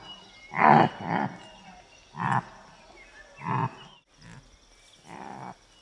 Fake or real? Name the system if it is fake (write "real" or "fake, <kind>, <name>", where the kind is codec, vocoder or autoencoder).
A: real